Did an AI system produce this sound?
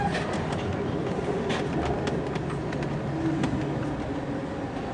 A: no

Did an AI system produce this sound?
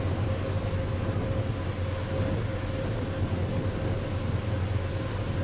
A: no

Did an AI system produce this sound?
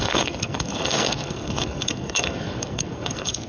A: yes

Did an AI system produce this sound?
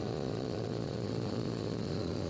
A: yes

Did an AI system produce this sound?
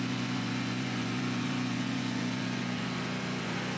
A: yes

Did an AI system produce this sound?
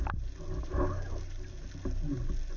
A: no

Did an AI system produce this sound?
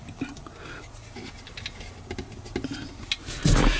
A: no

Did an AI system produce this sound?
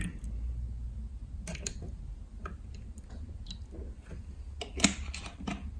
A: no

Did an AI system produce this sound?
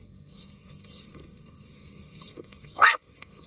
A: yes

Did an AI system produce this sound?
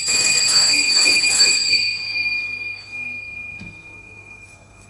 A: yes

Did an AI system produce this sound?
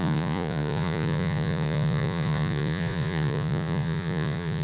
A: yes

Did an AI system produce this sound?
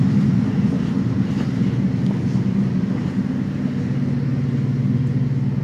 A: no